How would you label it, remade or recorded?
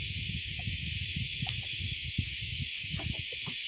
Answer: remade